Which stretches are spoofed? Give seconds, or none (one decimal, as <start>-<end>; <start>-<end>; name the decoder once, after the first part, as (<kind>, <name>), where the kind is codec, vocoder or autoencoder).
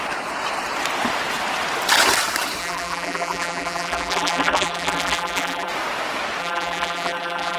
2.6-5.7 (vocoder, BigVGAN v2); 6.4-7.6